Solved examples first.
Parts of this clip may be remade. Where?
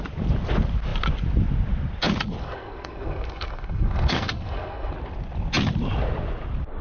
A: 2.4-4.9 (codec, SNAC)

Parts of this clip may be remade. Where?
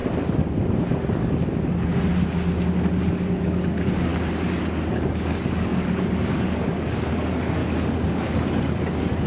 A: 3.1-4.1 (codec, DAC); 4.9-7.6; 8.1-9.3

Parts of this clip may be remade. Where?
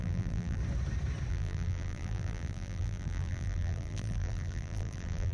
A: 0.0-0.6 (vocoder, BigVGAN v2); 1.3-5.3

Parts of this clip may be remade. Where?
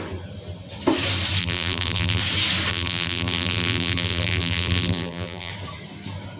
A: 1.4-2.2 (vocoder, BigVGAN v2); 2.7-5.5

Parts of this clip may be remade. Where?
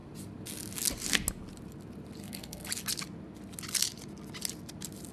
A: 2.2-2.7 (codec, SNAC)